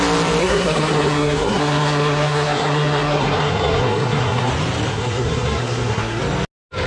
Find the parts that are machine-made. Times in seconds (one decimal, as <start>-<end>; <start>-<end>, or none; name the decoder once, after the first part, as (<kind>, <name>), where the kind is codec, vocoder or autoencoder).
0.4-4.5 (codec, SNAC); 4.9-6.2